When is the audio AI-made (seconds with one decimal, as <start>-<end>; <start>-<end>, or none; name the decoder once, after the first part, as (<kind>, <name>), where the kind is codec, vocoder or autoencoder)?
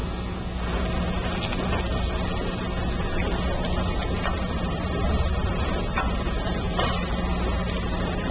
none